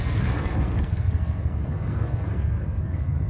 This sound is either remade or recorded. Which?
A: remade